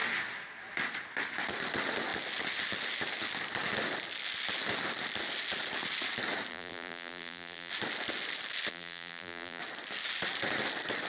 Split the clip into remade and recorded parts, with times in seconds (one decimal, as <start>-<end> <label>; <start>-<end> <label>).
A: 0.0-6.5 recorded; 6.5-7.7 remade; 7.7-8.7 recorded; 8.7-9.6 remade; 9.6-11.1 recorded